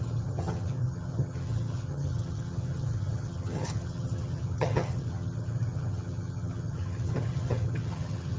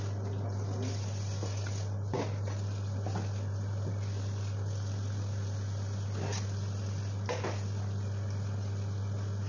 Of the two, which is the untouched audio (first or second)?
second